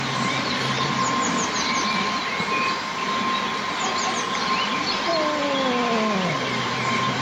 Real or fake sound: real